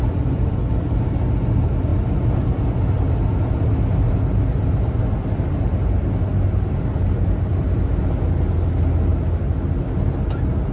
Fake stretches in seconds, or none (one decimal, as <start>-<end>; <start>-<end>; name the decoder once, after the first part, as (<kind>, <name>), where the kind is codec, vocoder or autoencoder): none